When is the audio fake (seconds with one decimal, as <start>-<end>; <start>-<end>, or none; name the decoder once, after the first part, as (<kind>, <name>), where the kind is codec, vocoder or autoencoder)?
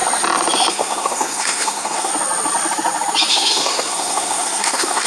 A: 0.7-2.1 (codec, SNAC); 3.3-5.1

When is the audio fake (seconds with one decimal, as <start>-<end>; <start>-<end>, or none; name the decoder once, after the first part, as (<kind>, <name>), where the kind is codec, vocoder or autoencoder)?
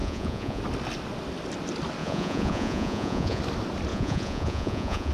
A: 0.0-0.6 (vocoder, Vocos); 2.0-3.4; 3.9-5.1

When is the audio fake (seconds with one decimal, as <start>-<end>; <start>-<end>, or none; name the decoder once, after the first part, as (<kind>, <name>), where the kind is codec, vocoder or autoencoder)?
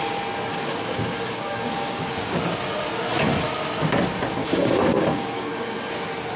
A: 0.5-2.4 (codec, DAC); 4.4-5.9